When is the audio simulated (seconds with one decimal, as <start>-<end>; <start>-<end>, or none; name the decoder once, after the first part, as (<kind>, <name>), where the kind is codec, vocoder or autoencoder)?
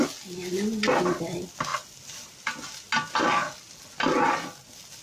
none